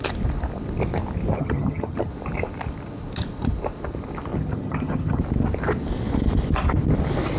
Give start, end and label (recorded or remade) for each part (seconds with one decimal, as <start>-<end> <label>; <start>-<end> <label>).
0.0-1.3 recorded; 1.3-2.1 remade; 2.1-4.3 recorded; 4.3-5.2 remade; 5.2-7.4 recorded